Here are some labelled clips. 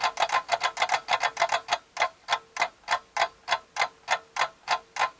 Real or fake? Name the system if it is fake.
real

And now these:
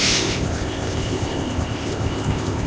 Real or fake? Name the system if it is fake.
fake, codec, ZipCodec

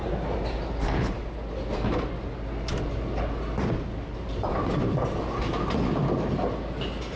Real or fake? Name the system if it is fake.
real